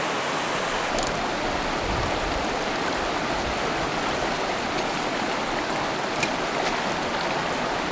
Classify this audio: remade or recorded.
remade